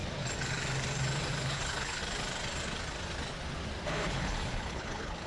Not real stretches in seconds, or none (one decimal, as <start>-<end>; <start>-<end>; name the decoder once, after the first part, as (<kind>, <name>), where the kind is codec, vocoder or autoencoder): 1.3-2.0 (codec, HILCodec); 3.9-5.3